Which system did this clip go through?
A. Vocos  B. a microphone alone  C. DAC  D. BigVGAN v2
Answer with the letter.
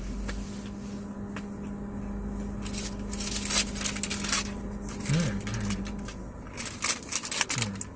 B